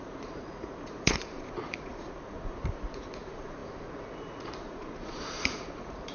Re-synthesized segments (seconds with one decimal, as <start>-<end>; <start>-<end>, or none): 0.0-6.1